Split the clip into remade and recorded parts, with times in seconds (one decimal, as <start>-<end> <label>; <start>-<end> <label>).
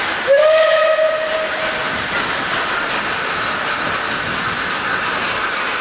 0.0-5.8 recorded